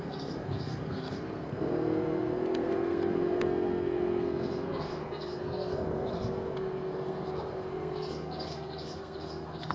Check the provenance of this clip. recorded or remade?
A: remade